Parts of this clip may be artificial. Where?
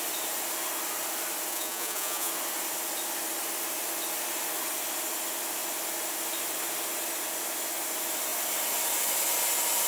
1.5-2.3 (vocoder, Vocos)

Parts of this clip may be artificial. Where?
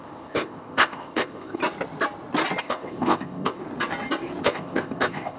0.0-1.6 (codec, ZipCodec); 2.6-3.6; 4.4-5.4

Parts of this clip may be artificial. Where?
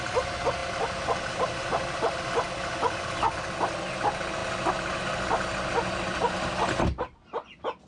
none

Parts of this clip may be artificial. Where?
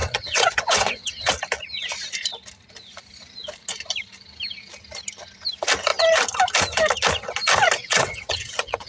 0.0-1.3 (vocoder, WaveNeXt); 7.8-8.9